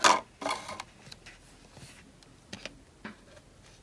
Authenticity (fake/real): real